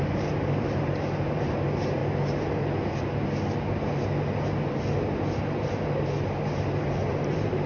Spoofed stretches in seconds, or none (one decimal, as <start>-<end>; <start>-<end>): 0.0-2.0; 5.4-7.7